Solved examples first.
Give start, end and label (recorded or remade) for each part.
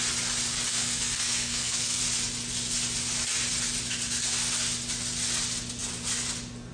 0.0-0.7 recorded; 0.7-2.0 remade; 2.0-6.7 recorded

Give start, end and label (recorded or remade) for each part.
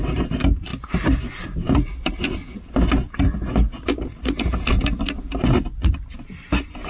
0.0-6.9 recorded